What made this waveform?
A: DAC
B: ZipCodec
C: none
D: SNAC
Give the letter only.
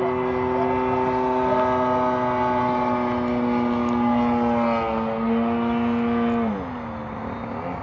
C